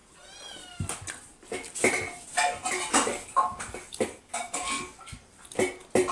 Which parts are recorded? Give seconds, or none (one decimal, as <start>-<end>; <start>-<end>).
0.0-3.1; 5.0-6.1